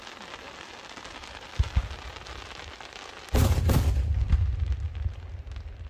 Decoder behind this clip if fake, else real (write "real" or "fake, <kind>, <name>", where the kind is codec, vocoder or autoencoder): real